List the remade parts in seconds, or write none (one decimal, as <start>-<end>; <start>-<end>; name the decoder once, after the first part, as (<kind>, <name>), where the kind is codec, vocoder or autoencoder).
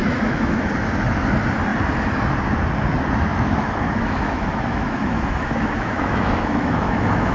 0.0-0.7 (autoencoder, DAC-VAE); 3.3-7.3